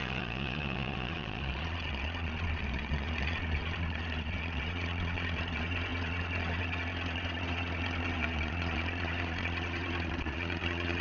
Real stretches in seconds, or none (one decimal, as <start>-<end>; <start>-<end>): none